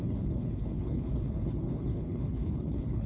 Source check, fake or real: fake